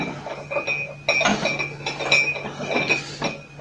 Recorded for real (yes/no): yes